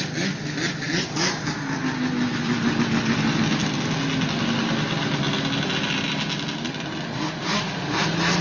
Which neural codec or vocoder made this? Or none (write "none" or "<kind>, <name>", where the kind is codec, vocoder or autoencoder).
none